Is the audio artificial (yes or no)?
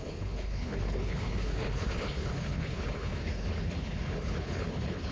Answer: yes